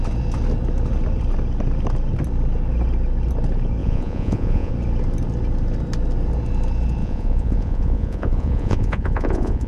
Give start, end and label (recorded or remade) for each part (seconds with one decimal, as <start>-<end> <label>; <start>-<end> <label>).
0.0-3.8 recorded; 3.8-4.7 remade; 4.7-7.0 recorded; 7.0-9.7 remade